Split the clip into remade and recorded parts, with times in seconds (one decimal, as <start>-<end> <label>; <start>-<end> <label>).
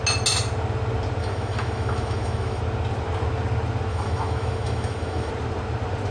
0.0-1.2 recorded; 1.2-2.6 remade; 2.6-3.9 recorded; 3.9-5.3 remade; 5.3-6.1 recorded